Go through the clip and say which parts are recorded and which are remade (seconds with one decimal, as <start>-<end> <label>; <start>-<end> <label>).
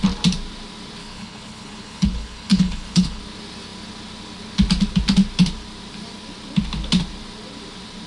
0.0-1.0 recorded; 1.0-3.2 remade; 3.2-8.1 recorded